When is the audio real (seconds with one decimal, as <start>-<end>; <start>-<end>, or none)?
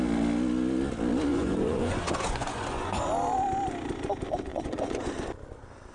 0.0-1.3; 3.0-4.5; 5.1-5.9